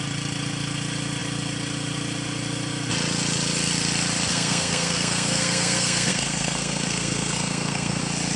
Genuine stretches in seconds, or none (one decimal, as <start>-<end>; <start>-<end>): 0.0-4.3; 8.0-8.4